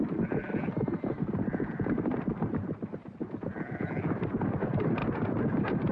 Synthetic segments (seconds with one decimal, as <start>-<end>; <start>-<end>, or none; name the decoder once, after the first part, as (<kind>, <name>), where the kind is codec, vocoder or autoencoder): 0.5-3.8 (vocoder, BigVGAN v2)